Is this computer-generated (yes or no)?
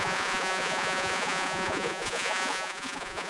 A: yes